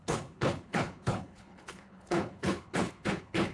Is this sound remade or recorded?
remade